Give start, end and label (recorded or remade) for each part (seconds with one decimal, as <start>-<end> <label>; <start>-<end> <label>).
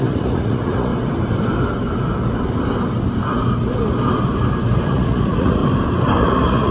0.0-0.9 remade; 0.9-4.9 recorded; 4.9-5.6 remade; 5.6-6.2 recorded; 6.2-6.7 remade